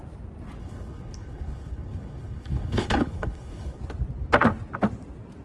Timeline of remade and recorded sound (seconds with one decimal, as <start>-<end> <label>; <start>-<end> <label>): 0.0-0.6 recorded; 0.6-3.8 remade; 3.8-5.4 recorded